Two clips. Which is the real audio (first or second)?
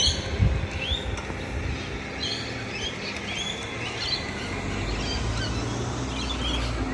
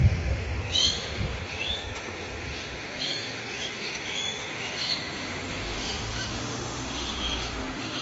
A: first